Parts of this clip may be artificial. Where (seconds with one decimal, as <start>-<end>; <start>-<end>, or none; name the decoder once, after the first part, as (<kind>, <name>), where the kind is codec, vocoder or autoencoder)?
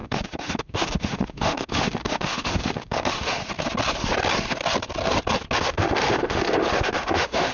0.0-3.4 (autoencoder, DAC-VAE); 5.6-7.5